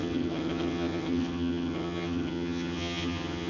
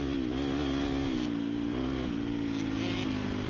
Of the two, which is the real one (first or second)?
second